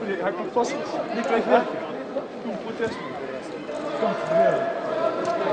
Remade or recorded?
recorded